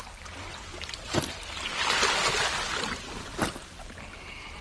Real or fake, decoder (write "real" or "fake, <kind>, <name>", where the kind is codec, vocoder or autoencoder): real